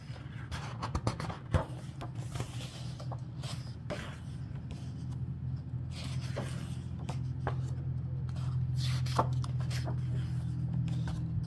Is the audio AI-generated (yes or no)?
no